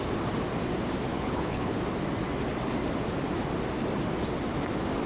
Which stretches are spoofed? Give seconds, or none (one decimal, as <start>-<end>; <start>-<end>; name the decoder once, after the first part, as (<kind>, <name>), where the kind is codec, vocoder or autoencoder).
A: 1.1-1.7 (codec, HILCodec)